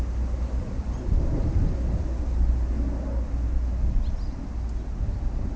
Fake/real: real